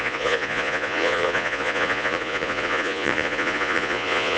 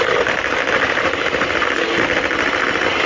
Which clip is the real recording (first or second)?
second